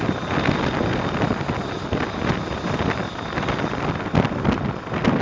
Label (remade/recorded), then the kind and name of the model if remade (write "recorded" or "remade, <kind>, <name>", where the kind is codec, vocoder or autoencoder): recorded